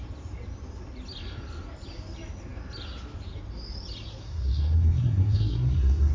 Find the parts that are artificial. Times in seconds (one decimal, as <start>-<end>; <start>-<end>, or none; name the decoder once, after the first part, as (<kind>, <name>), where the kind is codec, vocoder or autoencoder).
4.2-6.1 (codec, SNAC)